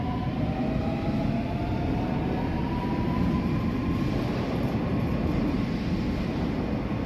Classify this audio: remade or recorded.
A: recorded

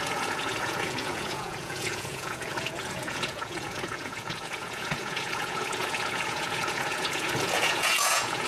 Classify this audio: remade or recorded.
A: remade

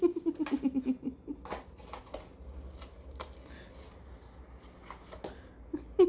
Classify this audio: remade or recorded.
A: recorded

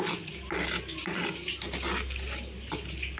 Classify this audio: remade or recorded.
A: recorded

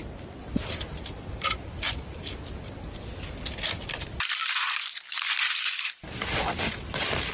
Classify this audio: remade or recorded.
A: recorded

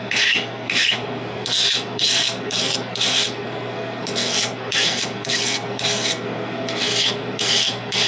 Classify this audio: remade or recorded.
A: remade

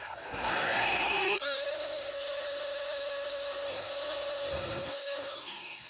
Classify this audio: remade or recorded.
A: remade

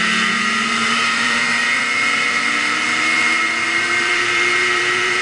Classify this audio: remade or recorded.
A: remade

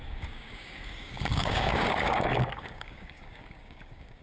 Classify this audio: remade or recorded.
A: remade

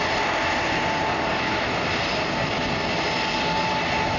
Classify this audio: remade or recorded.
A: recorded